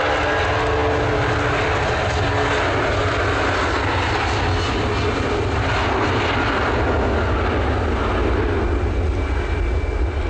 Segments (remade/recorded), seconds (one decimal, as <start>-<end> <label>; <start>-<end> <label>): 0.0-10.3 recorded